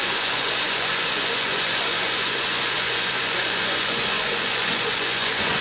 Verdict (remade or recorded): remade